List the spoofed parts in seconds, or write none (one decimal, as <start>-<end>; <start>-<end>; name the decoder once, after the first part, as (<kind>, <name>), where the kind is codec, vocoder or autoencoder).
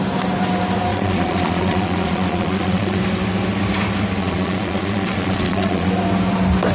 0.9-3.0 (vocoder, Vocos); 4.2-5.9